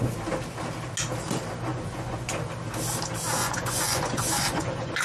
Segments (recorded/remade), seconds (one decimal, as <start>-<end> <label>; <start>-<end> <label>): 0.0-1.7 recorded; 1.7-2.3 remade; 2.3-3.4 recorded; 3.4-5.0 remade